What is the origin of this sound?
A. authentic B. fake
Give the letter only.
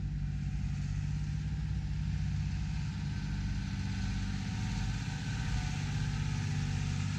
A